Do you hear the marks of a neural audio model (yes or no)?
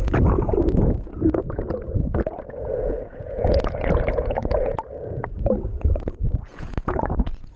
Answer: yes